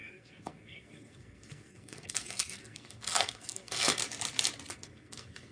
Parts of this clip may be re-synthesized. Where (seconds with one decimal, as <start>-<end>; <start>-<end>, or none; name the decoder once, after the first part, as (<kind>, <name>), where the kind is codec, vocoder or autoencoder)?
0.0-4.0 (codec, SNAC); 4.7-5.5